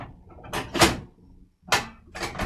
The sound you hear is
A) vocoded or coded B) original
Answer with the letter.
B